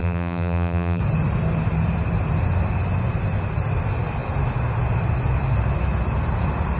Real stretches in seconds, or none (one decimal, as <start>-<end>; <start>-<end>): 1.0-6.8